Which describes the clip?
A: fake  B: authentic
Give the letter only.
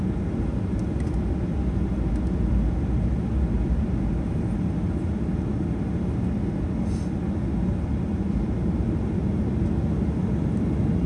B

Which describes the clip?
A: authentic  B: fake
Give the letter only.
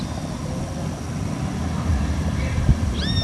A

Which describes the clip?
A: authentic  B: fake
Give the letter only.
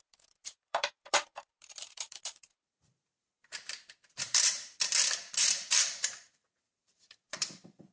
B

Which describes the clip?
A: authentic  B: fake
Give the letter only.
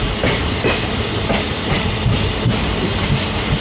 A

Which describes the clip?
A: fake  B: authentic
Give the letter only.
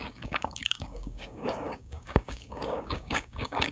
A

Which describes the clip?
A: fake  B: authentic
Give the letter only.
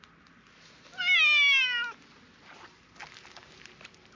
B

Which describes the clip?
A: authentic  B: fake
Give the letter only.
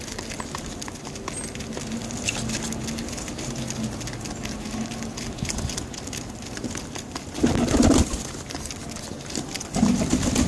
A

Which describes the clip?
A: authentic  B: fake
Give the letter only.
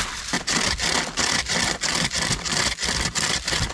A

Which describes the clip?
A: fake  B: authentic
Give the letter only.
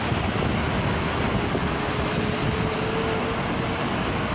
B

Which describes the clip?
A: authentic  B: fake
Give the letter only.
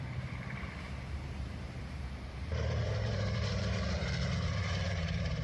B